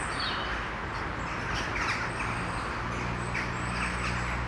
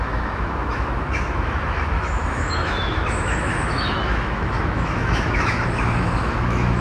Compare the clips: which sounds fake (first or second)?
second